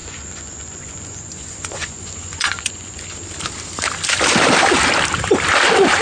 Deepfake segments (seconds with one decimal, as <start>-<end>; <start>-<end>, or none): 0.0-3.0